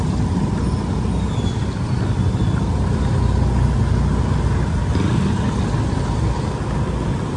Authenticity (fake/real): real